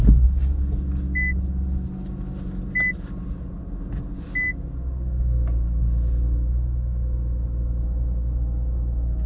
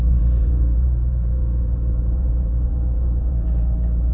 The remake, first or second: second